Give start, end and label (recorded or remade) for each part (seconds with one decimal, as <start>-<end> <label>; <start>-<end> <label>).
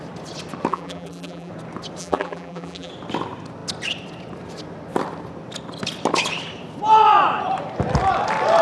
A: 0.0-0.7 recorded; 0.7-1.5 remade; 1.5-2.0 recorded; 2.0-2.9 remade; 2.9-8.6 recorded